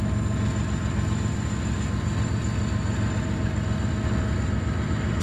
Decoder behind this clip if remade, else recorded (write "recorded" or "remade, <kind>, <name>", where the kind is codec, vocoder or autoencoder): recorded